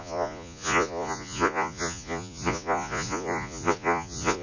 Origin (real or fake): fake